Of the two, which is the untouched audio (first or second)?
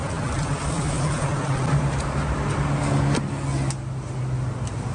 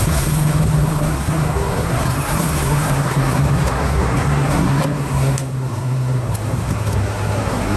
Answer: first